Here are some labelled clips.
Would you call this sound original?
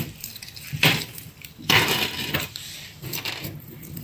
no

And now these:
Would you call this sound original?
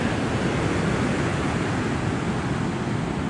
yes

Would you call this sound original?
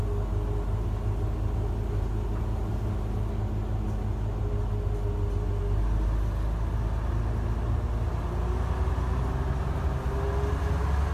yes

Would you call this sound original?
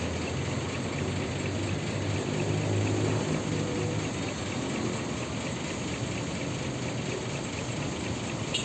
yes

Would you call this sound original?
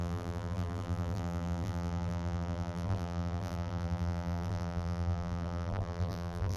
no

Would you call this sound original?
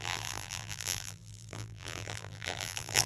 no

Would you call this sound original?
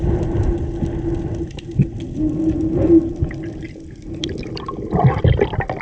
yes